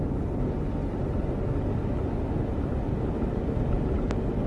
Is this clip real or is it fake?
real